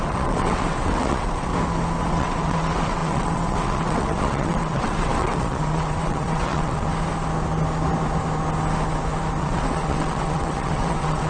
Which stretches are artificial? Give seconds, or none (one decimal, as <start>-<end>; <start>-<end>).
0.0-1.5; 2.1-6.9; 9.4-11.3

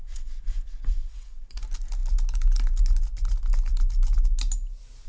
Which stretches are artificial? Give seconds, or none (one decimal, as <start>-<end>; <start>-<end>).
0.0-1.6

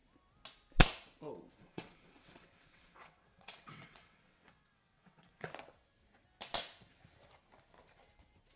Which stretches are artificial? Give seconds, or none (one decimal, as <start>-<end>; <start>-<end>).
1.6-5.5

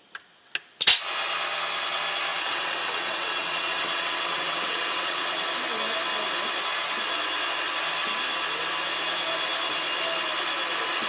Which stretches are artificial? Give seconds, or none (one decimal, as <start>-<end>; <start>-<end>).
2.3-5.3

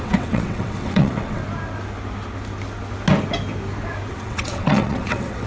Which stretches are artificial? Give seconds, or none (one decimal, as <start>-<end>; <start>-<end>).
0.0-1.4; 4.1-5.5

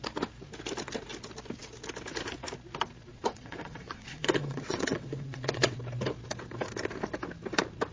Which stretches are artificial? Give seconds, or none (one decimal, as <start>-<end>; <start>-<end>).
3.1-5.8

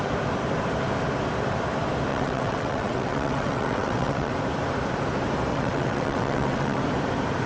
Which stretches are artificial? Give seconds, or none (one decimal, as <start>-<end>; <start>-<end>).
2.1-4.3; 5.5-6.8